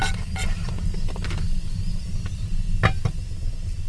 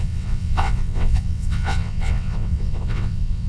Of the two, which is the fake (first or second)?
second